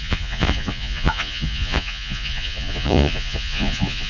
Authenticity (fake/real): fake